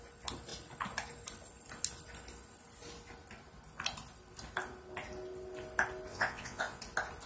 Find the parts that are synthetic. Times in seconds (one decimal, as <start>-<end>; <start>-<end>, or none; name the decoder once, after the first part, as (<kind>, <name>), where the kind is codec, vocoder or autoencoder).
6.1-6.8 (vocoder, WaveNeXt)